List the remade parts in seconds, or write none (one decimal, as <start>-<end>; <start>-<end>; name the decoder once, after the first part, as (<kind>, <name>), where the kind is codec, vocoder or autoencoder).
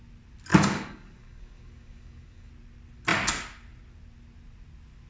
0.5-2.5 (codec, DAC)